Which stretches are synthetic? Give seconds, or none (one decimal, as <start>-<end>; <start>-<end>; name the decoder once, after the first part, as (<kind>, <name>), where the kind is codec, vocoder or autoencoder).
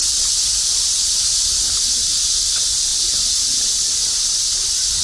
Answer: 2.9-4.4 (vocoder, BigVGAN v2)